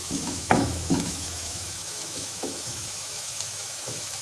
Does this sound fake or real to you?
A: fake